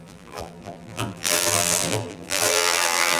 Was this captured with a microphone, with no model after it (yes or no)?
no